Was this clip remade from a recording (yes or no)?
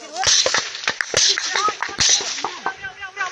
no